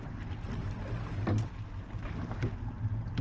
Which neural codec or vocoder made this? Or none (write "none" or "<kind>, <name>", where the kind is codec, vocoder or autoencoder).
none